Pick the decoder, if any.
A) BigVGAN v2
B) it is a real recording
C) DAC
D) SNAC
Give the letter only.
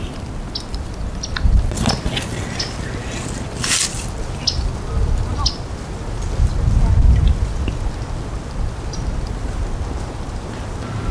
B